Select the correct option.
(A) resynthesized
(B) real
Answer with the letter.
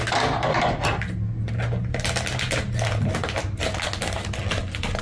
B